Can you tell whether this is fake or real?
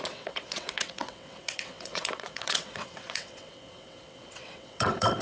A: fake